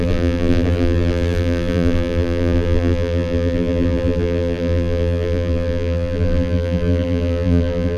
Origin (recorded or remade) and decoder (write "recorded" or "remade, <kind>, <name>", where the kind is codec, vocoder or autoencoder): remade, vocoder, BigVGAN v2